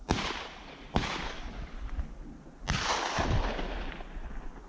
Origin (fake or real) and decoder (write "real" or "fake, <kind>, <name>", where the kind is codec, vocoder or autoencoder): real